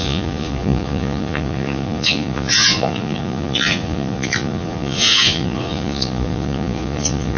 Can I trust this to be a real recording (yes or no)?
no